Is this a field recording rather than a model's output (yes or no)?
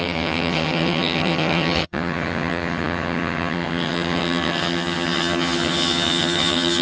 no